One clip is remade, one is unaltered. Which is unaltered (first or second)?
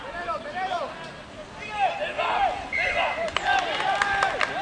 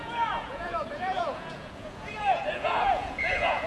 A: first